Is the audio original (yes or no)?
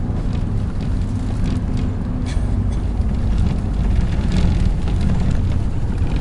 yes